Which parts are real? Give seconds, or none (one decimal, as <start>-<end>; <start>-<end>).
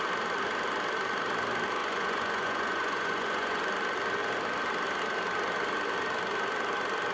0.0-1.8; 3.6-7.1